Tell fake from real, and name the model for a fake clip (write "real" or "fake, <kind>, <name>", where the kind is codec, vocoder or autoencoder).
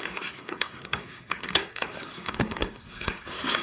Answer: fake, codec, SNAC